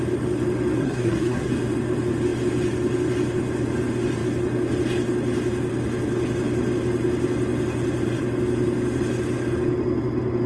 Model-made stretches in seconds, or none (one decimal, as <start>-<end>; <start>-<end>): 0.8-1.5